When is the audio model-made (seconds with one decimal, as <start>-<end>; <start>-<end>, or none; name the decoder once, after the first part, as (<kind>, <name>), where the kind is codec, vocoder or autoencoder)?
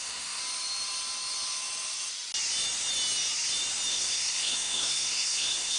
0.0-0.4 (codec, SNAC); 3.9-5.8